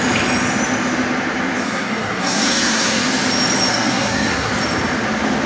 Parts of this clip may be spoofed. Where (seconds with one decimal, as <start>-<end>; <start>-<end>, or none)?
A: 1.6-3.0; 3.7-4.5